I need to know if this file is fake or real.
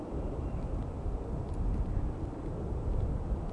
real